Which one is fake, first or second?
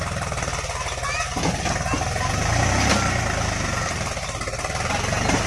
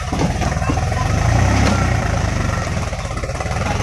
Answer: second